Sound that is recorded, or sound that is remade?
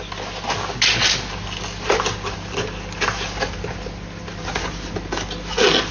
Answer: recorded